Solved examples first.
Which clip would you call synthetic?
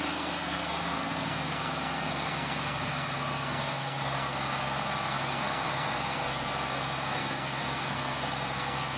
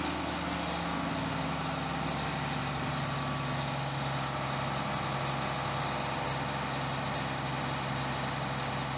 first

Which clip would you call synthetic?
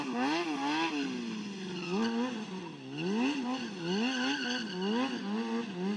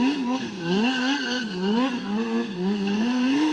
second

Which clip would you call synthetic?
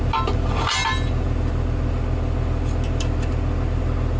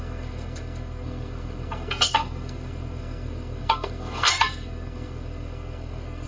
second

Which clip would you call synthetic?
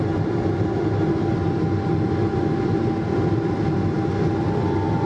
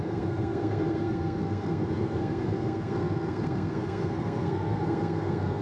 second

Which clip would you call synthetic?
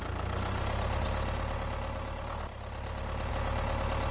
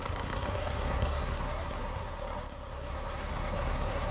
second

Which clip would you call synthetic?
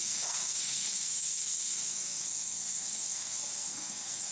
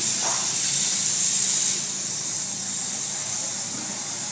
first